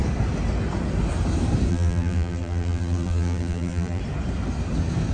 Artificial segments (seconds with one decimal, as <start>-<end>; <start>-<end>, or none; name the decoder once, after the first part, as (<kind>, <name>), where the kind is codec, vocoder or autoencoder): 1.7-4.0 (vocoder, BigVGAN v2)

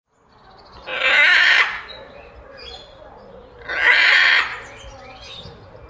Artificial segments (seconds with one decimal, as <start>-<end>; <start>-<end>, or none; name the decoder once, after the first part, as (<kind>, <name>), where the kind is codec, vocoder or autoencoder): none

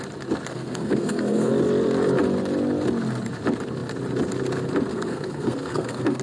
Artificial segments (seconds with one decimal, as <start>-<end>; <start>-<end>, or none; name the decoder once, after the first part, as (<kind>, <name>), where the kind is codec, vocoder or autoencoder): 0.5-1.5 (codec, SNAC); 4.9-6.2

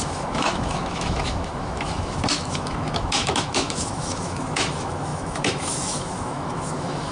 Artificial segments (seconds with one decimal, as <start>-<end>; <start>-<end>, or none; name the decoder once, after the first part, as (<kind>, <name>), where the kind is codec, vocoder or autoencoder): 0.0-7.1 (autoencoder, DAC-VAE)

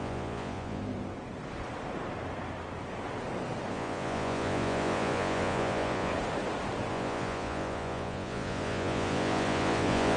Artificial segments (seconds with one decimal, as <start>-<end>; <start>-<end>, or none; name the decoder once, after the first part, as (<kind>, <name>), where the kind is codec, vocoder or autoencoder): 0.0-0.8 (vocoder, Vocos); 3.7-6.1; 6.9-10.2